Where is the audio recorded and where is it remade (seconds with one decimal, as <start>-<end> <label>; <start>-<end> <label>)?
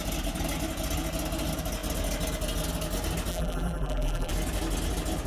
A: 0.0-3.3 recorded; 3.3-4.3 remade; 4.3-5.3 recorded